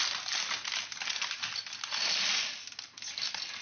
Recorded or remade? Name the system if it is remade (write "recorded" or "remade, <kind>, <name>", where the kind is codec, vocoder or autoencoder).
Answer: recorded